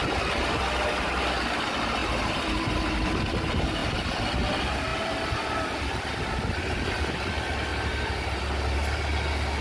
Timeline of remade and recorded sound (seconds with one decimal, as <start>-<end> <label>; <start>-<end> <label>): 0.0-2.0 recorded; 2.0-3.1 remade; 3.1-7.7 recorded; 7.7-8.4 remade; 8.4-9.6 recorded